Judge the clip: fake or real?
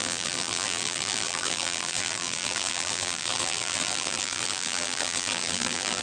fake